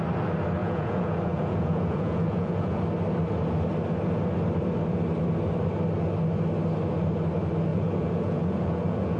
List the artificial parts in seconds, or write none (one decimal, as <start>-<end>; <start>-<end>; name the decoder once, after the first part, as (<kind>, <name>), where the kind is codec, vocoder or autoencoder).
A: 0.6-2.8 (vocoder, Vocos); 7.7-9.2

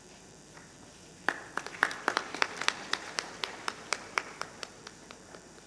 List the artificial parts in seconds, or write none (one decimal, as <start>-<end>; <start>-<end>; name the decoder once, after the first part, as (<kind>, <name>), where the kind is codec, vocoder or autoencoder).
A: 0.0-5.7 (vocoder, BigVGAN v2)